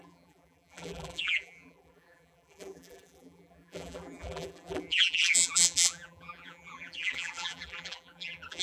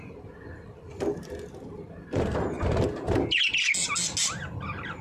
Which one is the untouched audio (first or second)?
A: second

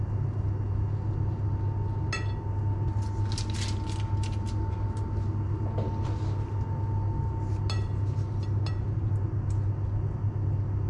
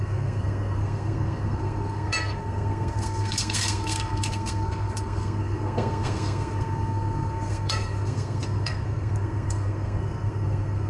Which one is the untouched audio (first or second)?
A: first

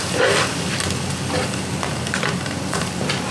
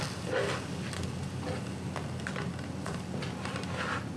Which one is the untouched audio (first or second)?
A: second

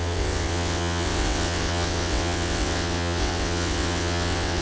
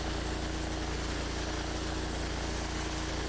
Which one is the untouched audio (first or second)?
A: second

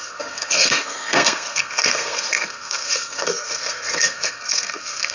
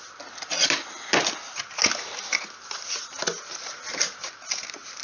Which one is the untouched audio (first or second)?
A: second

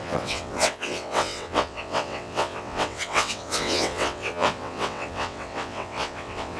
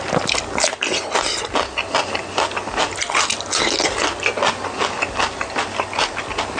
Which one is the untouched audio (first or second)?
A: second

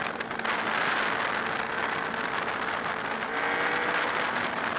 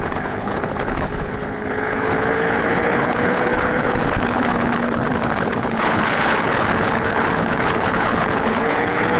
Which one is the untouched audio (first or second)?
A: first